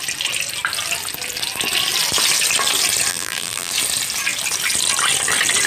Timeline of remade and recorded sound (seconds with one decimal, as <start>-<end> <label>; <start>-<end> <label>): 0.0-3.1 recorded; 3.1-3.7 remade; 3.7-5.7 recorded